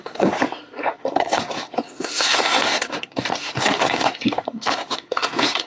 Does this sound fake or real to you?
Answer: fake